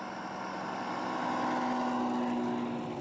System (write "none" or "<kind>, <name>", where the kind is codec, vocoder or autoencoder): none